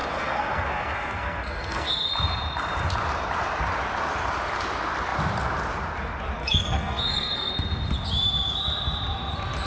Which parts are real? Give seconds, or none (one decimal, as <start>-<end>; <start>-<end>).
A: 2.1-6.4; 7.5-9.7